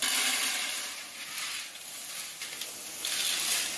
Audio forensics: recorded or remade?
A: recorded